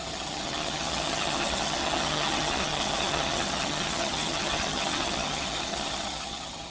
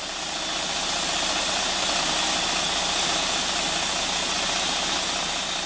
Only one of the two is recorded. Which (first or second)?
second